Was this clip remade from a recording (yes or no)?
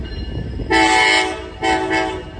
no